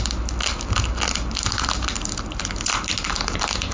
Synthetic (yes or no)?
no